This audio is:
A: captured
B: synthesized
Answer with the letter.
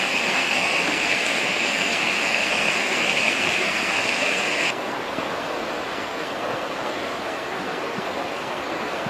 B